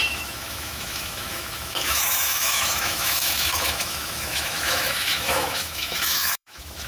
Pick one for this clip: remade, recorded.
remade